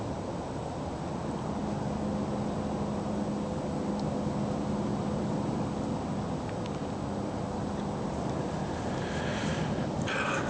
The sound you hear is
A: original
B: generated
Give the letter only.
A